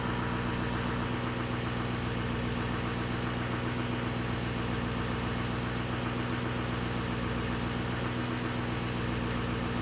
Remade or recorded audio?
recorded